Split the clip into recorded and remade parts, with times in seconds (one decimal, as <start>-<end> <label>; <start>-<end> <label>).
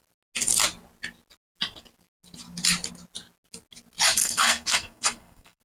0.0-4.2 recorded; 4.2-5.6 remade